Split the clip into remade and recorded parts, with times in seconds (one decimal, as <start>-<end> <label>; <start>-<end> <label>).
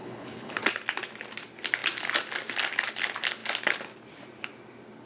0.0-0.7 remade; 0.7-5.1 recorded